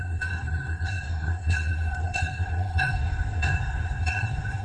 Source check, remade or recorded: remade